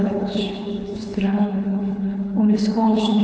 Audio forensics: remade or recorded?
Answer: remade